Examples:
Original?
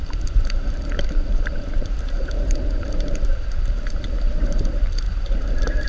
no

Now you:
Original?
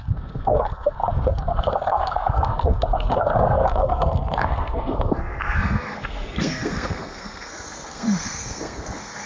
no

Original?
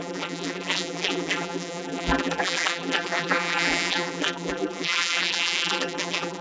no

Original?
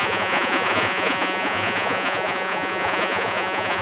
no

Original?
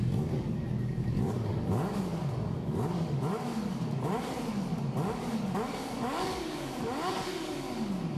no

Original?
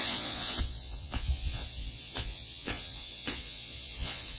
no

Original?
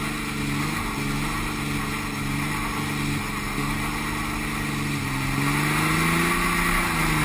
yes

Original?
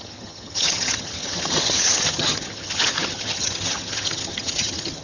no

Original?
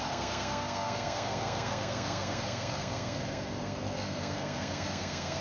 no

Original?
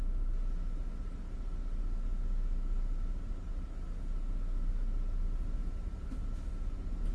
yes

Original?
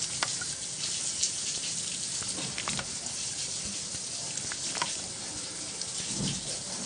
yes